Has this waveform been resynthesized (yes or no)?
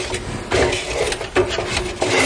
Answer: no